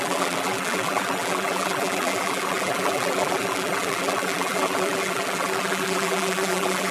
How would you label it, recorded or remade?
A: remade